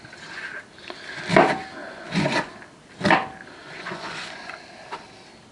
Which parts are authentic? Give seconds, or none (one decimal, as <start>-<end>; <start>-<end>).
0.0-1.8; 2.5-3.6; 4.5-5.5